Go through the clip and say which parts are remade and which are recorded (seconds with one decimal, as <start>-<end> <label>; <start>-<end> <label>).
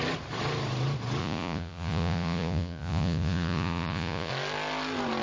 0.0-1.2 recorded; 1.2-4.3 remade; 4.3-5.2 recorded